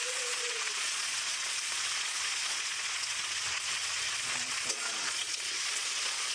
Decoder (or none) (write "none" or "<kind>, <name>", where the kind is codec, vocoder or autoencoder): vocoder, Vocos